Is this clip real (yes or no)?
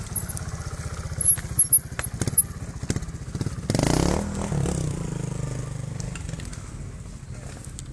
yes